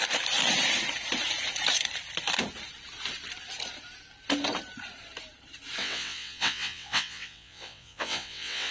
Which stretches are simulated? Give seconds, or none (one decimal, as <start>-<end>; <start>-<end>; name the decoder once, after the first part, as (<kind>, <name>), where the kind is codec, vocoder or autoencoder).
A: 5.8-8.7 (vocoder, WaveNeXt)